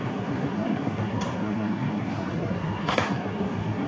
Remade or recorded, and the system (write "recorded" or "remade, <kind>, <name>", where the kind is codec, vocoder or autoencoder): remade, codec, SNAC